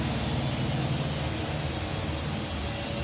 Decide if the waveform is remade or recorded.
recorded